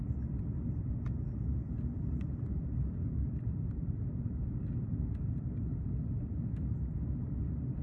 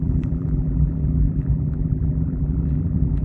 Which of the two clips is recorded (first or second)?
first